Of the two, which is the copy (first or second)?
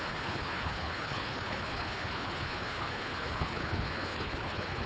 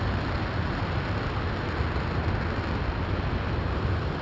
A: first